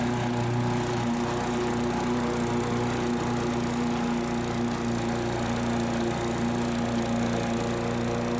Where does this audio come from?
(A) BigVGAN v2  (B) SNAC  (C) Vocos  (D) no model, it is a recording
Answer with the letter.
D